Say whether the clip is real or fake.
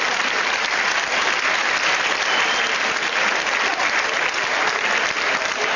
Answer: real